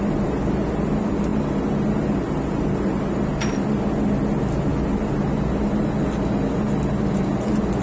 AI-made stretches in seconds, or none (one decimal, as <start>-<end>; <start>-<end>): none